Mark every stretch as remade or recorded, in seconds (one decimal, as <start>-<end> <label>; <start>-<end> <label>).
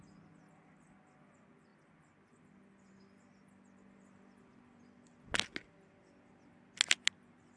0.0-7.6 recorded